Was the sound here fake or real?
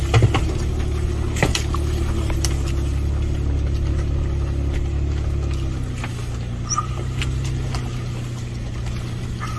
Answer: real